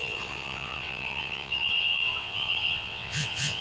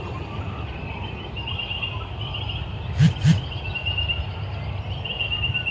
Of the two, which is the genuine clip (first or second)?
second